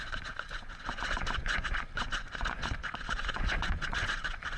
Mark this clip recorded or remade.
remade